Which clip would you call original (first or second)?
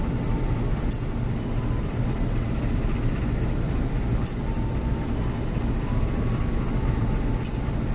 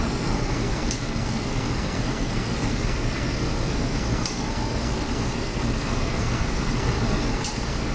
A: first